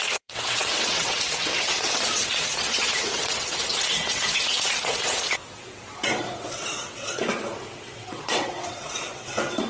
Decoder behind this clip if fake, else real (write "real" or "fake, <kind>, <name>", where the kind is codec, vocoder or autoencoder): fake, vocoder, WaveNeXt